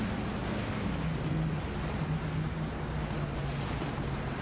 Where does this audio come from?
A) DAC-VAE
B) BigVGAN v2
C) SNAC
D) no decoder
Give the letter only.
D